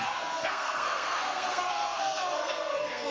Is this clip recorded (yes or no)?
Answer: no